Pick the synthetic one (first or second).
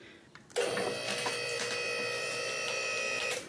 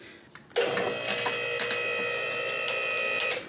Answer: first